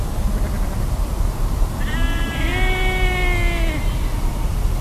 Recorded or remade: recorded